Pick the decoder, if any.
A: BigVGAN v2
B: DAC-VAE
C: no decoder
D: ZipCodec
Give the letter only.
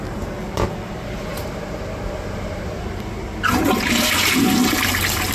A